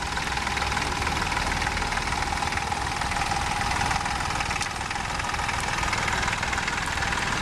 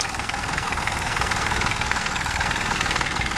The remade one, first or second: second